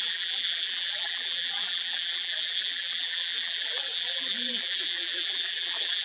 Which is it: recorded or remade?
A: remade